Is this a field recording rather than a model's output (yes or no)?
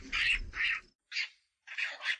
yes